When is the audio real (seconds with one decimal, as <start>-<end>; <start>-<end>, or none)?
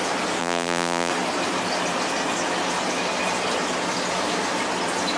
0.0-0.4; 1.1-5.2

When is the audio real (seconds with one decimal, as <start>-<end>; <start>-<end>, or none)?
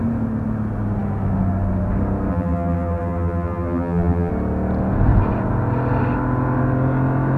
0.0-2.3; 4.3-7.4